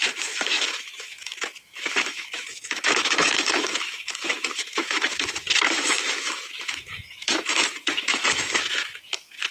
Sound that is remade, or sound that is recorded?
remade